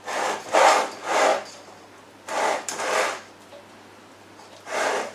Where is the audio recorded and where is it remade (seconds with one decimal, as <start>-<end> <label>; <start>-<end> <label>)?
0.0-5.1 recorded